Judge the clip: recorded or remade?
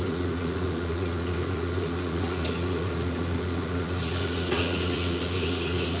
remade